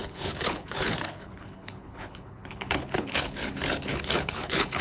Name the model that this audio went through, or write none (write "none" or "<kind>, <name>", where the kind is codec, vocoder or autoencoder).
codec, HILCodec